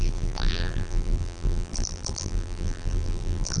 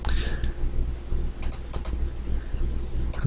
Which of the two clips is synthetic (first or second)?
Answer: first